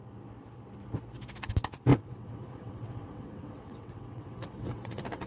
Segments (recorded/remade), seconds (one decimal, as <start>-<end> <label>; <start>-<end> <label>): 0.0-1.9 recorded; 1.9-5.3 remade